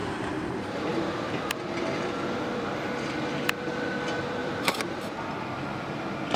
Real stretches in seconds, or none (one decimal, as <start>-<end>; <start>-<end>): 0.5-0.9; 1.5-4.4; 5.2-6.4